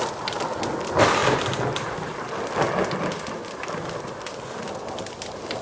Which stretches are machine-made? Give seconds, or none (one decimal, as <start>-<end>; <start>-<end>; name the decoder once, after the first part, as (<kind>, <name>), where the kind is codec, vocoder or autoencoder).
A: none